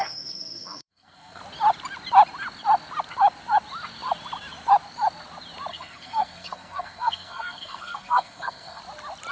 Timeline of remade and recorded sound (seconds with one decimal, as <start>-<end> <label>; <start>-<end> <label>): 0.0-1.4 remade; 1.4-5.7 recorded; 5.7-8.8 remade; 8.8-9.3 recorded